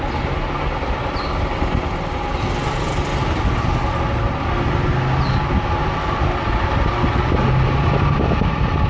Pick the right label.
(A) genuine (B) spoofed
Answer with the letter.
A